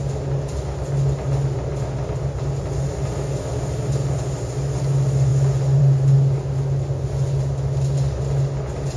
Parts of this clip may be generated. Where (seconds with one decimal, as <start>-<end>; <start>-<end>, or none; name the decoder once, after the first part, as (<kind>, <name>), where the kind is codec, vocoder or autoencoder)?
none